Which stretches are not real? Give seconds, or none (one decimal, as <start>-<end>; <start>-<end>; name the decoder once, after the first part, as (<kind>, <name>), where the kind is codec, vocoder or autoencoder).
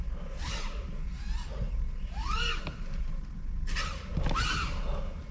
none